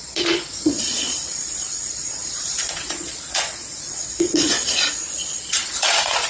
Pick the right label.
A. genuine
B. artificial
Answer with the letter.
B